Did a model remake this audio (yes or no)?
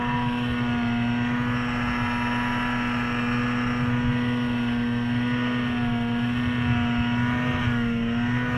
no